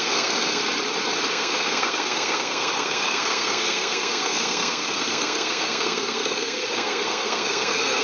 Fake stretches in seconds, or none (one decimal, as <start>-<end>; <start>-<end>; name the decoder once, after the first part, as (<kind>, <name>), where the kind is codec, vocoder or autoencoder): 0.0-0.6 (codec, SNAC); 1.3-8.0